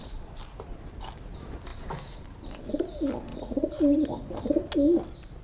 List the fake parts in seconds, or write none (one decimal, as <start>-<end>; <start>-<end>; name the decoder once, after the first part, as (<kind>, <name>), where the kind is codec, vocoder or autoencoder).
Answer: 3.3-4.2 (vocoder, Vocos)